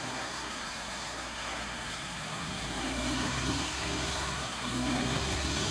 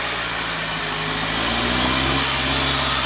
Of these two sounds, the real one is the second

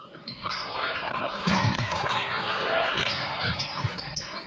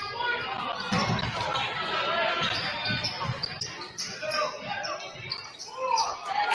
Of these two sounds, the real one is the second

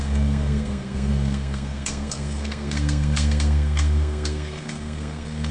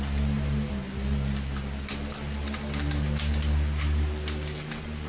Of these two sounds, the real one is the second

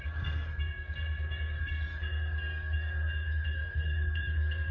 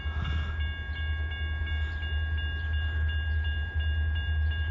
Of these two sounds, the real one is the second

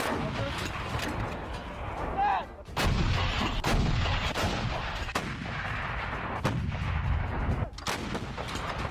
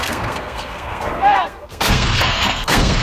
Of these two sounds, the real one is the first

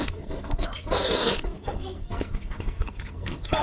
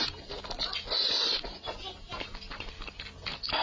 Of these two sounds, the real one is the second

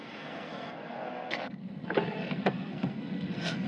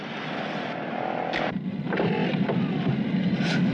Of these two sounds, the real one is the second